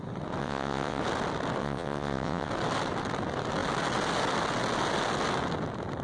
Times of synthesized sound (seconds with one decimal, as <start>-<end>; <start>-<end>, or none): 0.4-1.0; 1.6-2.5

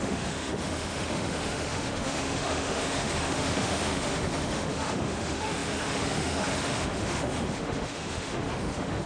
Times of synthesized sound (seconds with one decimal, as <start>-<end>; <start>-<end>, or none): 0.0-9.1

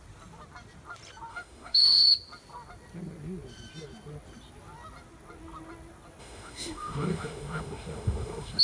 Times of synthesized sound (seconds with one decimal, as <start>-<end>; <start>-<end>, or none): 1.3-2.1; 6.2-8.6

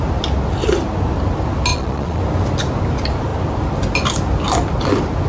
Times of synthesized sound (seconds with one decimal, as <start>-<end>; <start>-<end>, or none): 1.7-2.2

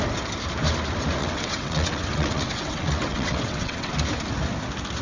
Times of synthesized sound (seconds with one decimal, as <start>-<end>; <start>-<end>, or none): 1.2-3.9

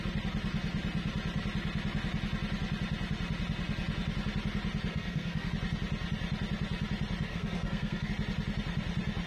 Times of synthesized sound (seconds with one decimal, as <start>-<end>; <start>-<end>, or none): 4.9-5.5; 7.3-8.1